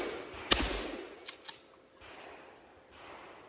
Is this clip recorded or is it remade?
recorded